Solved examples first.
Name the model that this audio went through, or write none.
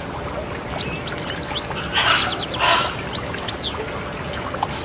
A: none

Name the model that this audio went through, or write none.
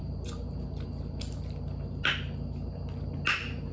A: none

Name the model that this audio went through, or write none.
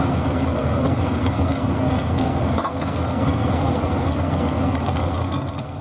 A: codec, SNAC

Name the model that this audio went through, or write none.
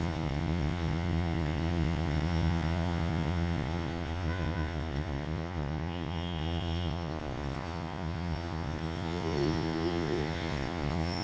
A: vocoder, Vocos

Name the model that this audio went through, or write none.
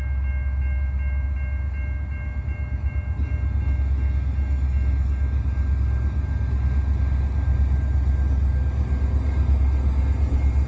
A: none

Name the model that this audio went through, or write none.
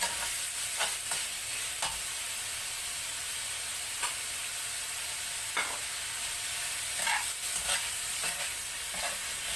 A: none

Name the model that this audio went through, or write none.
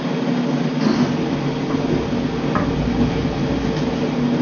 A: none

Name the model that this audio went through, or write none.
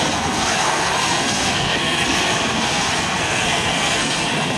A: codec, SNAC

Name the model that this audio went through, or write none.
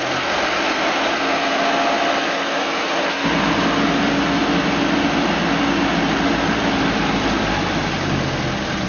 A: none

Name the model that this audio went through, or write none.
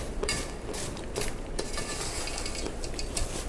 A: vocoder, BigVGAN v2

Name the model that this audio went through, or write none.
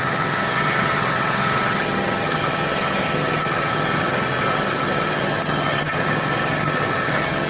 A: vocoder, HiFi-GAN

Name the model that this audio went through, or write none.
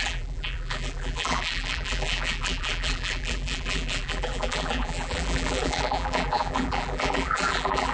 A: vocoder, BigVGAN v2